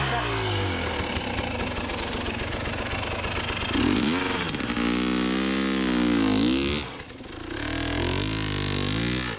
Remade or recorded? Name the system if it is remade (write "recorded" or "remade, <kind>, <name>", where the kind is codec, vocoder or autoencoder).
recorded